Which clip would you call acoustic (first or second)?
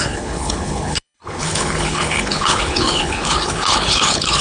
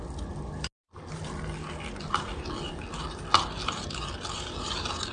second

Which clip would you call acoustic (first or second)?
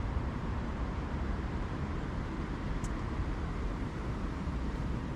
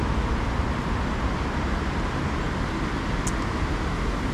second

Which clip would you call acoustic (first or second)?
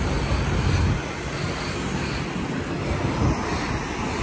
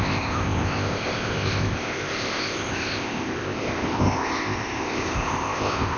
first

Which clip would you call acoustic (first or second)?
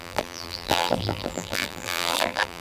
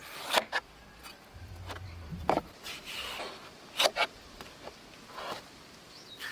second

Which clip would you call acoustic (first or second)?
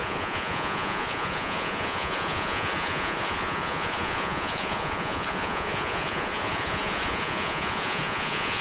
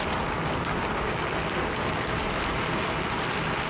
second